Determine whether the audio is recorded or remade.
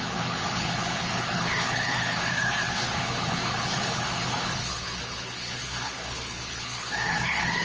remade